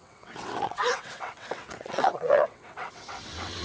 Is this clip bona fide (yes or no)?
no